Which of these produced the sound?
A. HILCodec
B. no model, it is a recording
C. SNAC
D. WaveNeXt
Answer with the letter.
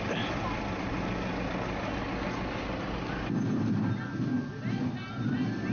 B